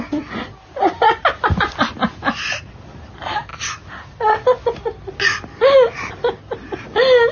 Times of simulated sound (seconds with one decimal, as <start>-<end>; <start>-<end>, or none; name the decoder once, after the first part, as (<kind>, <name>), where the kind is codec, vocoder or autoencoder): none